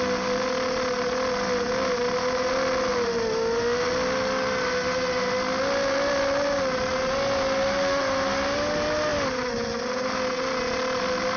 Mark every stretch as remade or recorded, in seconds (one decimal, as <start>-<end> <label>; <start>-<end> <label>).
0.0-11.4 recorded